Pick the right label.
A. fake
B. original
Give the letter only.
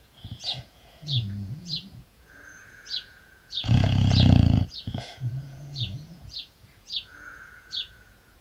A